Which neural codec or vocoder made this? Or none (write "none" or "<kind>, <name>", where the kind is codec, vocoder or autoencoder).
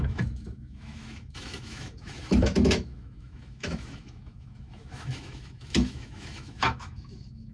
autoencoder, DAC-VAE